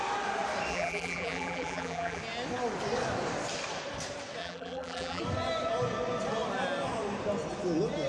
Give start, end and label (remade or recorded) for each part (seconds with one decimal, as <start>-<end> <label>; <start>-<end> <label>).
0.0-0.7 recorded; 0.7-2.2 remade; 2.2-4.4 recorded; 4.4-5.2 remade; 5.2-8.1 recorded